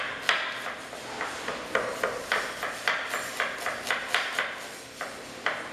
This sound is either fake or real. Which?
real